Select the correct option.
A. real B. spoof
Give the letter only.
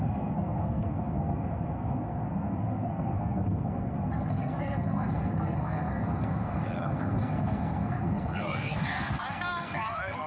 B